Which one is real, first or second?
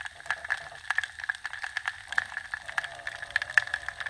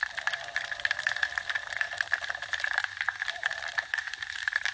first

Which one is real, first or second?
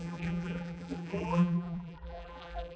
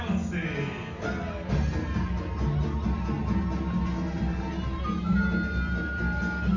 second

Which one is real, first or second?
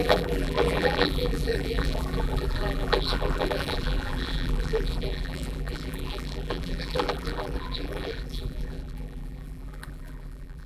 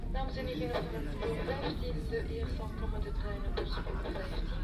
second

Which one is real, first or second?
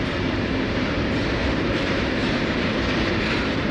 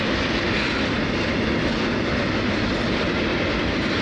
second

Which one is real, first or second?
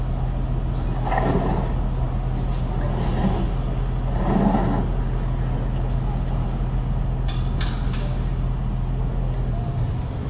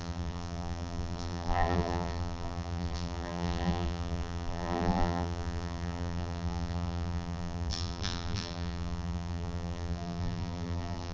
first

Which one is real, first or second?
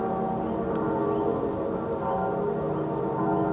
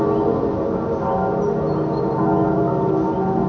second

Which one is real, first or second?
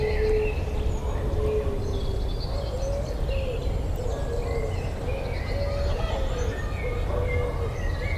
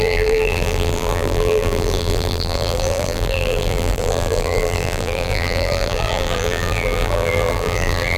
first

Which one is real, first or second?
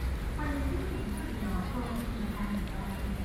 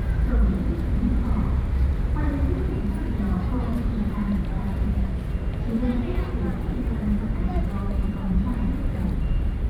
first